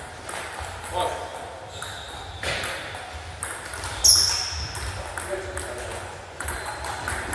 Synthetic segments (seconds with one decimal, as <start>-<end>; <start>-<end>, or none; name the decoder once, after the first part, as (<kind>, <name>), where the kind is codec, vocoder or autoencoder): 5.9-6.7 (vocoder, Vocos)